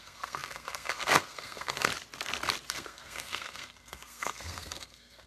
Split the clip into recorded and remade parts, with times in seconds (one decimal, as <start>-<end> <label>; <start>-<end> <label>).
0.0-1.9 remade; 1.9-2.7 recorded; 2.7-5.3 remade